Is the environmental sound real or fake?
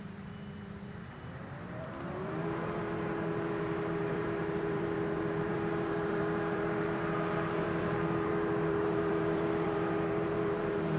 fake